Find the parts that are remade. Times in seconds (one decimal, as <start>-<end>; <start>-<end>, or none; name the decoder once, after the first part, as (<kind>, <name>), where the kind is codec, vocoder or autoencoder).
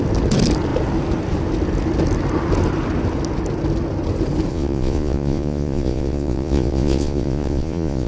4.5-8.1 (vocoder, Vocos)